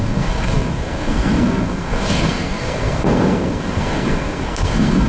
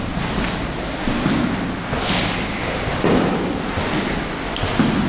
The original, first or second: second